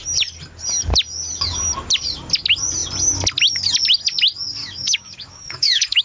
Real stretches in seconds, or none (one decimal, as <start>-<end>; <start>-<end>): 0.0-4.6

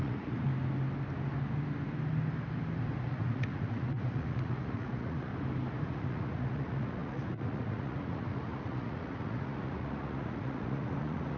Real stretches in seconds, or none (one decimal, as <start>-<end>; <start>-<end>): 0.5-3.0; 5.3-5.8